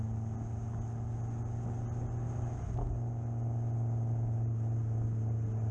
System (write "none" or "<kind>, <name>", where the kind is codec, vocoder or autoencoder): none